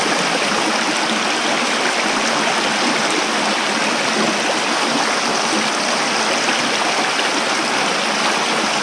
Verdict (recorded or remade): recorded